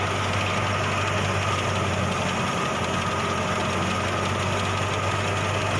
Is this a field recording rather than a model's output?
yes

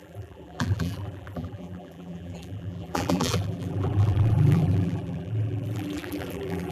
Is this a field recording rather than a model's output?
no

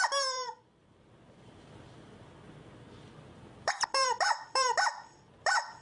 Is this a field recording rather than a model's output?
no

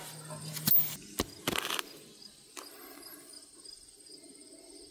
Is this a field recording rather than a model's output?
yes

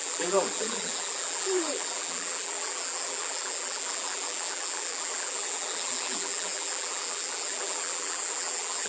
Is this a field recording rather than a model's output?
no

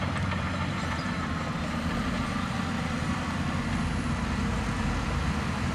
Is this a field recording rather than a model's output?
no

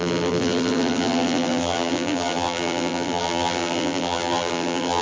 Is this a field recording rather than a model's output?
no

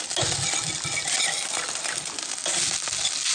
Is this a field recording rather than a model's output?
yes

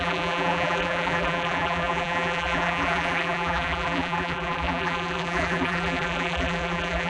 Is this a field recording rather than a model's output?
no